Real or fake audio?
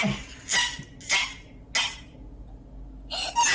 real